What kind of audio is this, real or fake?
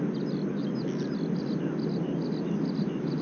real